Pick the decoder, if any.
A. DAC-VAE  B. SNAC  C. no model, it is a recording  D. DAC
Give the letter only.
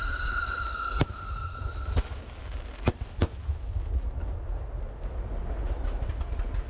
C